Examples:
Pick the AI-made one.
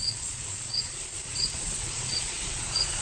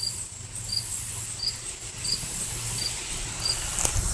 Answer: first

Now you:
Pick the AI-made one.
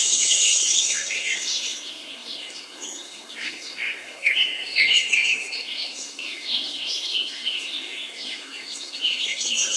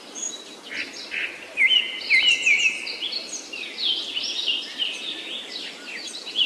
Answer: first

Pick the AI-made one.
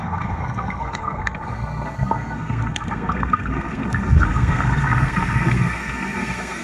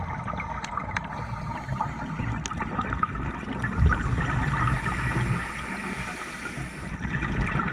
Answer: first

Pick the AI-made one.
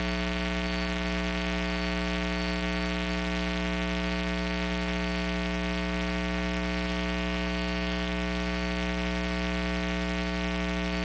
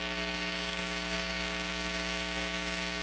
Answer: second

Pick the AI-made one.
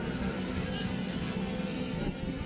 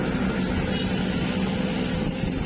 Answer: first